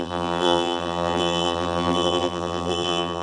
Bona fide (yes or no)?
no